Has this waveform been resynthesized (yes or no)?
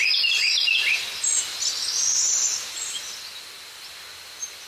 no